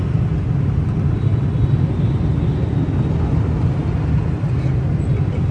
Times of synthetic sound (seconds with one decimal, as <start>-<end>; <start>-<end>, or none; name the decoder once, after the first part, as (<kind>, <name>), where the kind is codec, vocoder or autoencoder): none

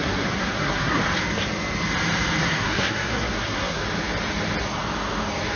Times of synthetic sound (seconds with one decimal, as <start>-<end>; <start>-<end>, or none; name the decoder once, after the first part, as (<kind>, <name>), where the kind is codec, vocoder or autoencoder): 0.0-1.0 (codec, SNAC); 2.4-3.8

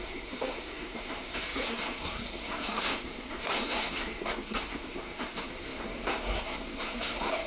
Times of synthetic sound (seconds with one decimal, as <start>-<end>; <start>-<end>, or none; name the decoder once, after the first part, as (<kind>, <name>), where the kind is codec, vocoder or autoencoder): 0.0-7.5 (codec, SNAC)

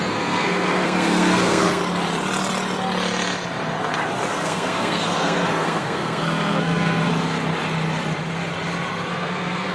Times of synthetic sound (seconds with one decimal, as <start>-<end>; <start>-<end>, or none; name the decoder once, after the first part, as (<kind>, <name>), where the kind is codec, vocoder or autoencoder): 0.0-1.8 (codec, SNAC); 4.3-7.1; 9.1-9.7

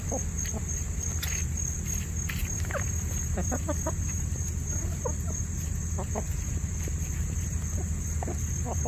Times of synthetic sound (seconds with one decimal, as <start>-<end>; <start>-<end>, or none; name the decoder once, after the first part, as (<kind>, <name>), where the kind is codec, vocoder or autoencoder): none

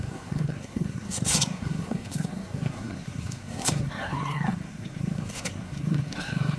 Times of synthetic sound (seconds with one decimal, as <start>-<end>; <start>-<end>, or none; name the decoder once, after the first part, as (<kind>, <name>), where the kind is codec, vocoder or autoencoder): 0.0-6.6 (codec, SNAC)

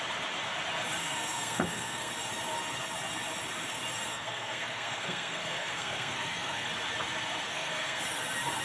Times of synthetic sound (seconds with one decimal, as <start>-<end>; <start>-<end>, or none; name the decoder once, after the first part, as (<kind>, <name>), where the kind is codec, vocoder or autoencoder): 1.0-2.1 (codec, SNAC); 4.1-6.7; 7.5-8.0